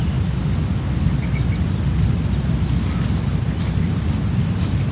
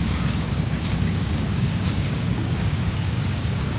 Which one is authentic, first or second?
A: first